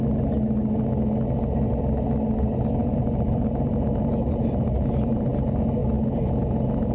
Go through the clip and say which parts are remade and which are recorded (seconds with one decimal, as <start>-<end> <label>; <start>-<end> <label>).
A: 0.0-2.8 recorded; 2.8-5.3 remade; 5.3-6.9 recorded